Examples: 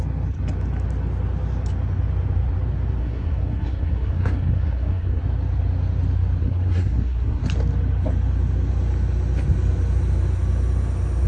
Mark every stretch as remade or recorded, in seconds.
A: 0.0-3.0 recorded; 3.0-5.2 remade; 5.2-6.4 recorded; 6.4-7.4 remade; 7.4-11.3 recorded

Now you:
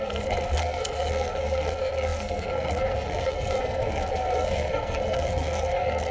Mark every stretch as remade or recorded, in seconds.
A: 0.0-6.1 remade